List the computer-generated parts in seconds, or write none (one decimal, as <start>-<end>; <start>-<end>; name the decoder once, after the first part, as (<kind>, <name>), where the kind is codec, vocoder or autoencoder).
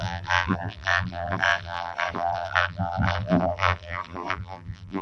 0.0-5.0 (vocoder, BigVGAN v2)